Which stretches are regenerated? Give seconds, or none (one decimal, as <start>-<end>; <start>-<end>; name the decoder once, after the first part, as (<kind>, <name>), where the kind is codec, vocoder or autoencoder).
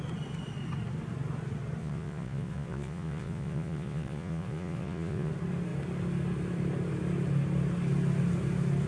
1.8-5.3 (vocoder, Vocos)